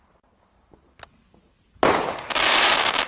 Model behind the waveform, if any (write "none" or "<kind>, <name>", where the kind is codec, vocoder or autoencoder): none